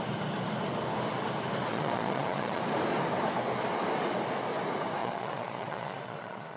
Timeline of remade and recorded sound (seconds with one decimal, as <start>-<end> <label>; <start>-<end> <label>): 0.0-1.7 recorded; 1.7-2.6 remade; 2.6-5.0 recorded; 5.0-6.6 remade